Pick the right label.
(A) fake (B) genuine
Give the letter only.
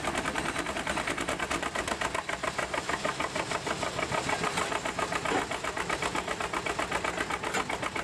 B